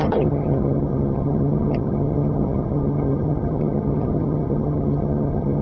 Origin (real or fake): fake